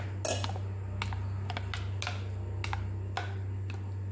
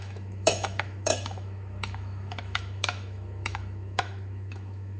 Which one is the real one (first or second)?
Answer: first